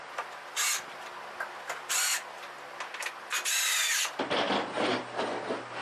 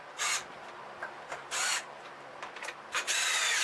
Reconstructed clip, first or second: second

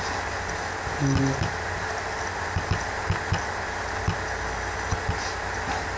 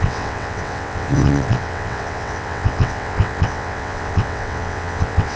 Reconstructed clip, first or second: second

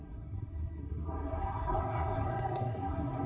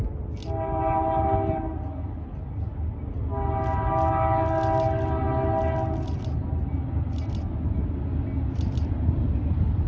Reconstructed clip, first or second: first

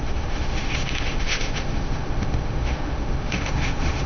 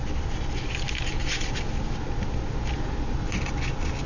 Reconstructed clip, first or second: first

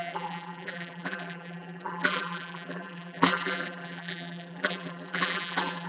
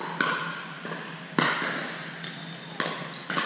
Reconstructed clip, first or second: first